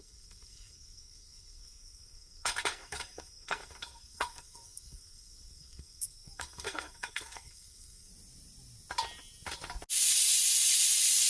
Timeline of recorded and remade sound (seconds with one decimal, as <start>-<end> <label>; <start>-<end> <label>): 0.0-8.1 remade; 8.1-11.3 recorded